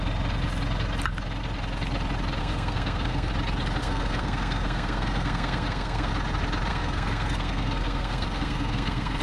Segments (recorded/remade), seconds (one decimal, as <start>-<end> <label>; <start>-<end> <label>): 0.0-2.4 recorded; 2.4-3.3 remade; 3.3-3.8 recorded; 3.8-6.1 remade; 6.1-6.7 recorded; 6.7-9.2 remade